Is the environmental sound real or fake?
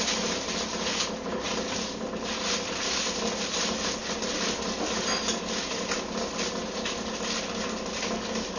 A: real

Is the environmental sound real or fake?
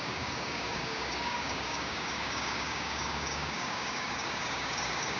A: fake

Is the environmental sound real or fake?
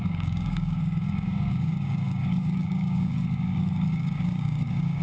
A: fake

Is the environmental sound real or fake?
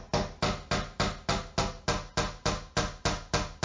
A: real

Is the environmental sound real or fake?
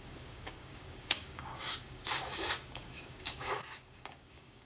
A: fake